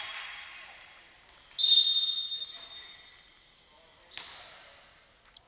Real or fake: real